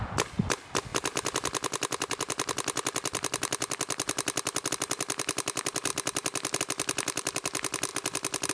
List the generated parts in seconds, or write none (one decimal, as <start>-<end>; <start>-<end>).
none